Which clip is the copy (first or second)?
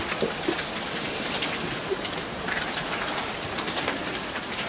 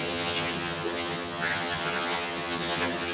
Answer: second